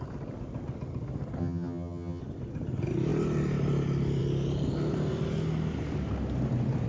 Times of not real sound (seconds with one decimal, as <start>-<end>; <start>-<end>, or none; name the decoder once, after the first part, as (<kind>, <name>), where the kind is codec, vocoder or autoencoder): 1.4-2.2 (vocoder, HiFi-GAN)